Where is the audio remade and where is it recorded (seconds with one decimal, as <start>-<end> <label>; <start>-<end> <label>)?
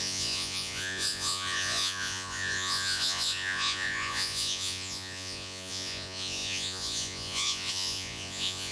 0.0-8.7 remade